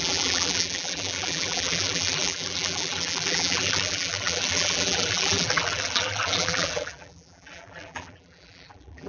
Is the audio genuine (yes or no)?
no